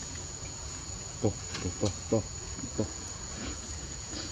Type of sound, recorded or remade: remade